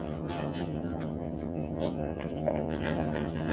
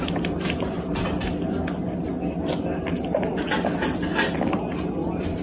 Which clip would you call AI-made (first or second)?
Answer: first